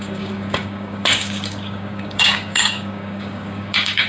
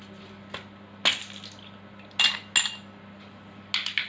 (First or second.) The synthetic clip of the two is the first